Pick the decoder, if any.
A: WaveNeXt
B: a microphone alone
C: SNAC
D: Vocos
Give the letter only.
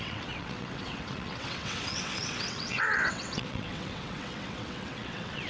A